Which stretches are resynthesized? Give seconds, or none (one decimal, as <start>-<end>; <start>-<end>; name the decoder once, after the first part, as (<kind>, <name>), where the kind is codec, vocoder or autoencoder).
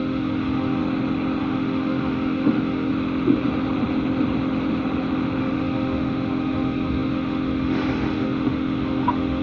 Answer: 0.0-0.8 (autoencoder, DAC-VAE); 1.4-2.9; 5.4-9.4